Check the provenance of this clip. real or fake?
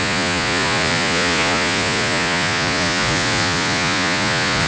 fake